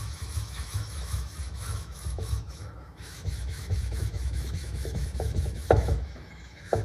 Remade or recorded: remade